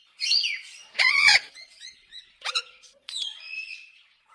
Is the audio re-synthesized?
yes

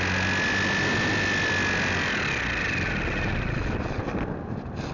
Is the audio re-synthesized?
no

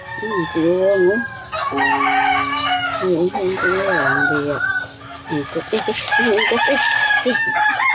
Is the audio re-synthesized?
no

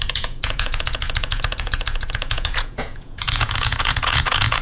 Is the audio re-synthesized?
yes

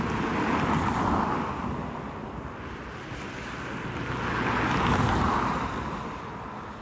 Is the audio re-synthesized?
no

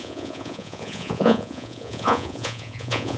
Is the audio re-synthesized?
yes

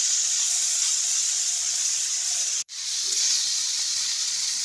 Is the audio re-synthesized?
yes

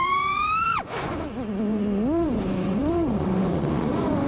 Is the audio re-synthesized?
yes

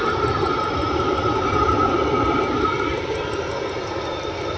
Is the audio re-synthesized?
no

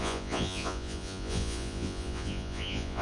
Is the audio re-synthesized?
yes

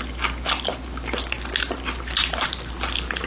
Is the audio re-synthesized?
no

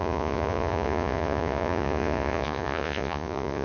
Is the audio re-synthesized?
yes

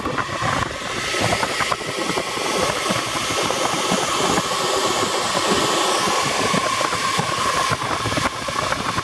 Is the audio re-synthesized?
no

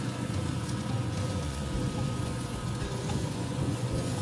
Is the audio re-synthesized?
yes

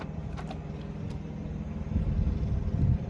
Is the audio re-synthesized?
no